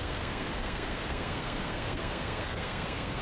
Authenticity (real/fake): fake